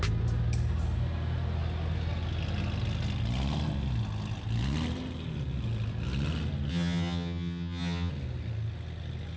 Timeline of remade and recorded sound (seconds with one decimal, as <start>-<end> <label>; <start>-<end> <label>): 0.0-6.7 recorded; 6.7-8.1 remade; 8.1-9.4 recorded